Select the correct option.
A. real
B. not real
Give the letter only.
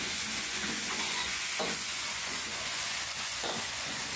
B